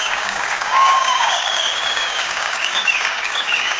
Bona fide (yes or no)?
no